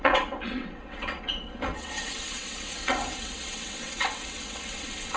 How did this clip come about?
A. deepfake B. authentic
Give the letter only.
A